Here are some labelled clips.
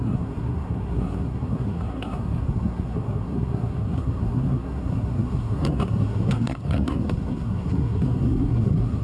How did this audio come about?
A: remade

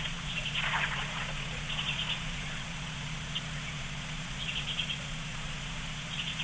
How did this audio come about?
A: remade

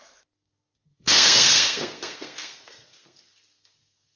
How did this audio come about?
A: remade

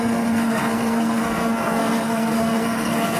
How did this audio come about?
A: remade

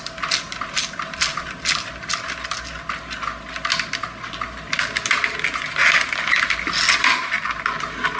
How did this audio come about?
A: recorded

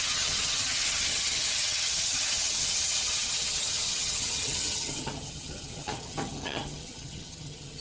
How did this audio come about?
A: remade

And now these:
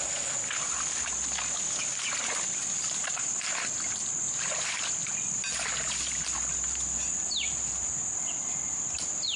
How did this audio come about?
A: recorded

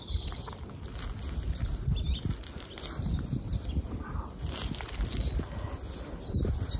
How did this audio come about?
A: recorded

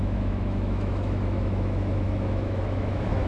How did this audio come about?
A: remade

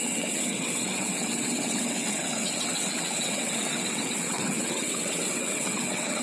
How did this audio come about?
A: remade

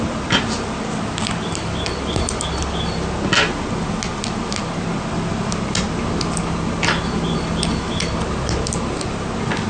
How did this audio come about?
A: recorded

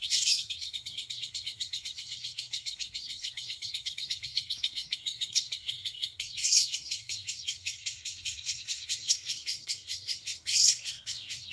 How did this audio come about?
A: remade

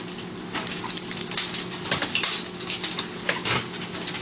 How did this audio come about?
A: recorded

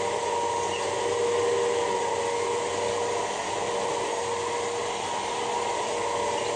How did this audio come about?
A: recorded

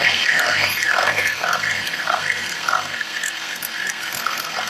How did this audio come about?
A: remade